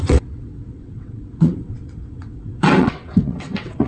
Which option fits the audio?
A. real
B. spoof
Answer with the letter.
B